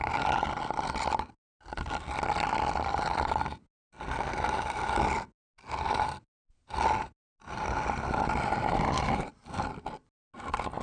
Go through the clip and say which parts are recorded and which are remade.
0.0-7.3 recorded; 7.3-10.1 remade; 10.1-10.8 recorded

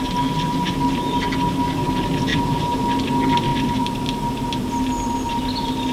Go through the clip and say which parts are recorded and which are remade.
0.0-2.3 recorded; 2.3-2.8 remade; 2.8-3.5 recorded; 3.5-4.0 remade; 4.0-5.9 recorded

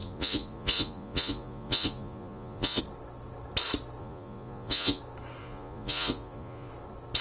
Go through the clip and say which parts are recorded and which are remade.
0.0-2.8 remade; 2.8-4.0 recorded; 4.0-5.0 remade; 5.0-5.4 recorded; 5.4-6.7 remade; 6.7-7.2 recorded